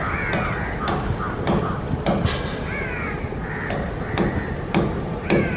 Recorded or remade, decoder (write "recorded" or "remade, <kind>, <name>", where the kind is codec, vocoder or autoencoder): recorded